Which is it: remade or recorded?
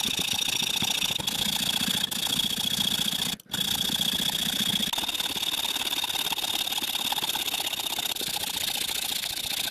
recorded